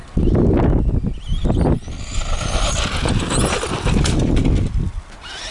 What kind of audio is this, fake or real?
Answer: real